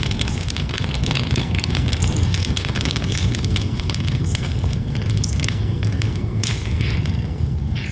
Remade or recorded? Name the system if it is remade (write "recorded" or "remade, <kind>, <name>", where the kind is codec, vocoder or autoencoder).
remade, codec, SNAC